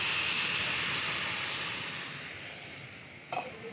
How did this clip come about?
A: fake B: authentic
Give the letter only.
B